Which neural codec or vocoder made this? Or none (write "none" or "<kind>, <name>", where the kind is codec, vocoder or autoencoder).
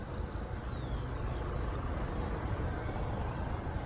none